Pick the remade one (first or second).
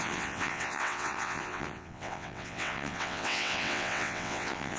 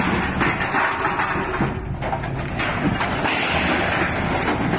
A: first